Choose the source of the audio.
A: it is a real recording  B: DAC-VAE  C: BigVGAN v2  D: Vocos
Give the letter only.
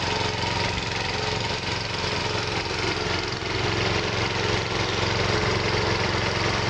A